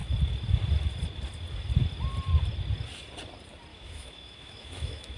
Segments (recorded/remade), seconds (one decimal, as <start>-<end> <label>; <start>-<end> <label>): 0.0-3.7 recorded; 3.7-5.2 remade